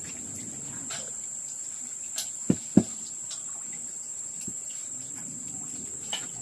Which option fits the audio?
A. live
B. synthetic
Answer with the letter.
B